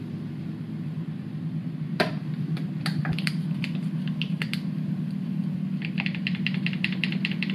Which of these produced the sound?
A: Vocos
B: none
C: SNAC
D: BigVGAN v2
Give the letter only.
D